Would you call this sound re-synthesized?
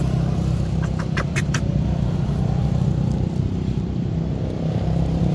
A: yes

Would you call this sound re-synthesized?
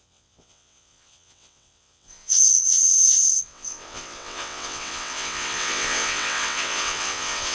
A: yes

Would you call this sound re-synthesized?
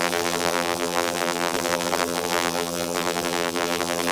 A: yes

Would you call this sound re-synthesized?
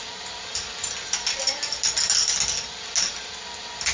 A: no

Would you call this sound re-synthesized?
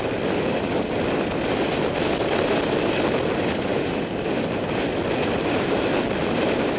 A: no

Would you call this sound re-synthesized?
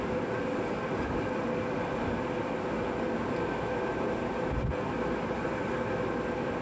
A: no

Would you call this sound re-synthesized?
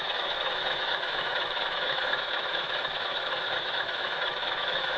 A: yes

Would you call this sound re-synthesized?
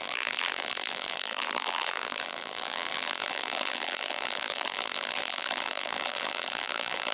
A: yes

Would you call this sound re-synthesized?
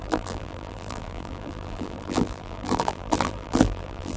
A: yes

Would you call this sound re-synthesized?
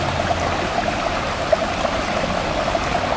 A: no